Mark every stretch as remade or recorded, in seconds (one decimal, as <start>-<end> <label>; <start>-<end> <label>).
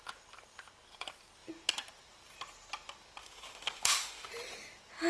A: 0.0-3.2 recorded; 3.2-4.3 remade; 4.3-5.1 recorded